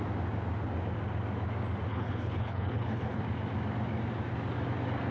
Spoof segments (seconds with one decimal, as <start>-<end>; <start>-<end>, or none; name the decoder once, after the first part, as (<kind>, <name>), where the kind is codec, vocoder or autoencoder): 1.9-3.2 (codec, HILCodec)